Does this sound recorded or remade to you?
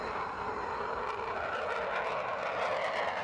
recorded